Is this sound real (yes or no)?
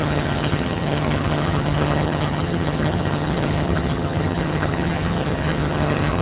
no